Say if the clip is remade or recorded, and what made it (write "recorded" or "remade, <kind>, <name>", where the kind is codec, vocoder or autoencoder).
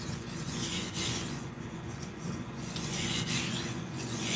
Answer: remade, vocoder, Vocos